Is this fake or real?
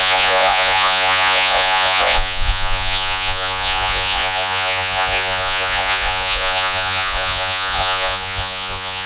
fake